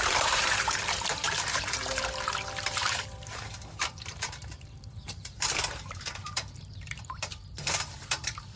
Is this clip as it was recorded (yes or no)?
no